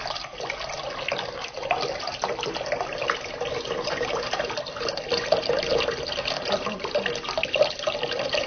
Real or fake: real